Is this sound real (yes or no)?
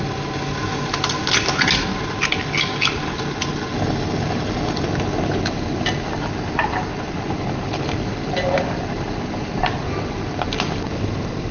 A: yes